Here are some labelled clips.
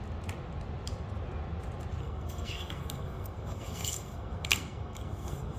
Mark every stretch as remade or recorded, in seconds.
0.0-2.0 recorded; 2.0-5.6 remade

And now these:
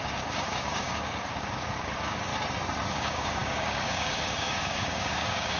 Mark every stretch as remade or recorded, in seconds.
0.0-2.3 remade; 2.3-2.9 recorded; 2.9-5.6 remade

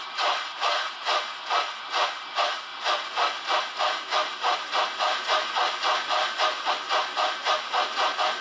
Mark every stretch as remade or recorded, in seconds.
0.0-8.4 recorded

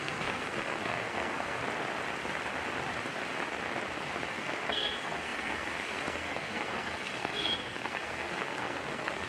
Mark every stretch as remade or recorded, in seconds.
0.0-1.6 remade; 1.6-4.3 recorded; 4.3-9.3 remade

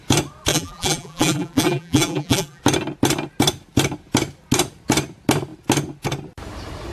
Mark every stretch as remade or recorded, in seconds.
0.0-0.5 recorded; 0.5-2.6 remade; 2.6-6.9 recorded

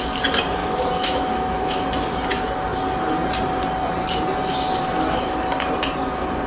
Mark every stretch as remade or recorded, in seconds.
0.0-0.6 recorded; 0.6-1.8 remade; 1.8-6.5 recorded

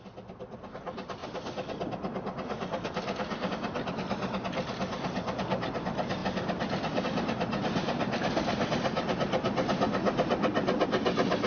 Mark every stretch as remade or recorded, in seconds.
0.0-11.5 recorded

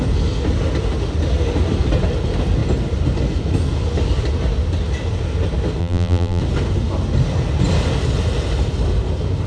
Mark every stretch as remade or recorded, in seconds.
0.0-5.8 recorded; 5.8-6.4 remade; 6.4-9.5 recorded